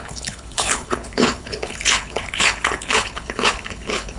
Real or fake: fake